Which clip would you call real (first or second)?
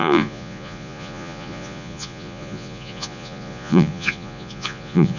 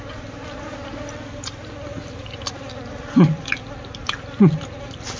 second